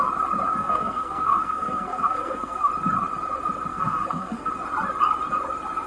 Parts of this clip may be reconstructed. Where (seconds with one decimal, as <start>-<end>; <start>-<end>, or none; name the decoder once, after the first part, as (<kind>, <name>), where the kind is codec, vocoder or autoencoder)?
0.6-2.7 (codec, SNAC); 3.7-4.5

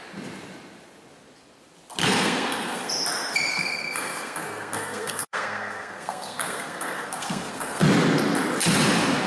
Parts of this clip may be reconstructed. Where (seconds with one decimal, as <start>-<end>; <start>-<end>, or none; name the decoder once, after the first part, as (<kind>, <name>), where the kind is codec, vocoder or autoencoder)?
2.0-2.9 (codec, SNAC); 3.5-7.8

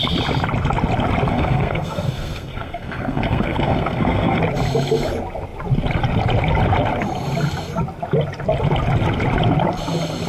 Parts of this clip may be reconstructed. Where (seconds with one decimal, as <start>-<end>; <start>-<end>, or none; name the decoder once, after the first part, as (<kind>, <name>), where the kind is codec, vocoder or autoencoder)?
1.3-4.4 (codec, SNAC)